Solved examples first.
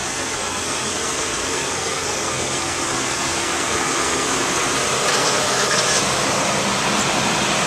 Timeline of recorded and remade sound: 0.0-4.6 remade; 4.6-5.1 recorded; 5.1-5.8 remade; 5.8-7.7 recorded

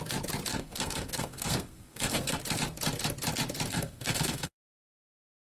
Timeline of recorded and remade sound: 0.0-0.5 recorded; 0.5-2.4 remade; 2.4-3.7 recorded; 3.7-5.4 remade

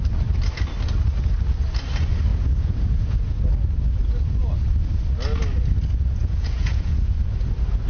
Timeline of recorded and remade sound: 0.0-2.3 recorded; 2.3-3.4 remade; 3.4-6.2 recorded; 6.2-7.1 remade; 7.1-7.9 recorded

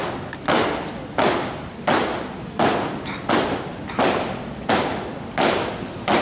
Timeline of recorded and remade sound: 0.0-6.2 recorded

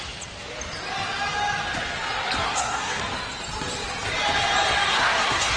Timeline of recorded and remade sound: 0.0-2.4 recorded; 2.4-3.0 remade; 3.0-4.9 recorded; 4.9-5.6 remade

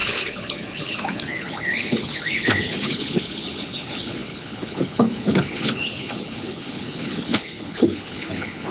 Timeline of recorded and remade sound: 0.0-8.7 remade

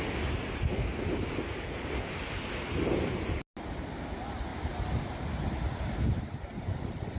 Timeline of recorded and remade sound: 0.0-4.5 recorded; 4.5-5.5 remade; 5.5-7.2 recorded

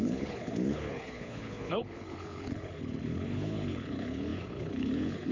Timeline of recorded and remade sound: 0.0-5.3 remade